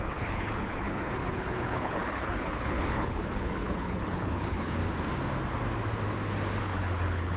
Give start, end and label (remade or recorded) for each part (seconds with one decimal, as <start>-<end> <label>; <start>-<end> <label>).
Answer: 0.0-4.8 remade; 4.8-6.6 recorded; 6.6-7.4 remade